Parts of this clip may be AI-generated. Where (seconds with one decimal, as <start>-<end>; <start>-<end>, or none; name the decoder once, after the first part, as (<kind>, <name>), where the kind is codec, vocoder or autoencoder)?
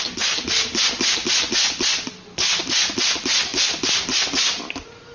none